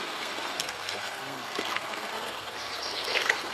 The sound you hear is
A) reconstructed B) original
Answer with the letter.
A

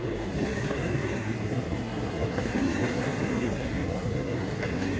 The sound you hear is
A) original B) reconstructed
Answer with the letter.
B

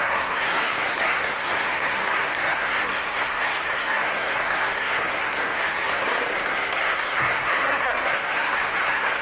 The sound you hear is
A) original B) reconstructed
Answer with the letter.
B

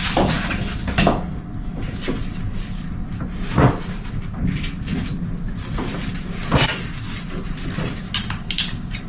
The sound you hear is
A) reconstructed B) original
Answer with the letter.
B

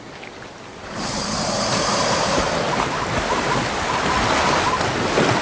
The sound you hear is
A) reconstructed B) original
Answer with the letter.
B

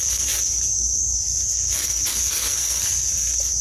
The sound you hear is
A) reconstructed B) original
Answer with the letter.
A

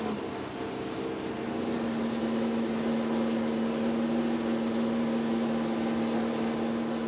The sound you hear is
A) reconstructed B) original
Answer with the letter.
B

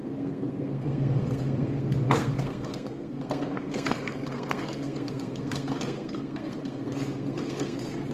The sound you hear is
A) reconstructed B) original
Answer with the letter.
A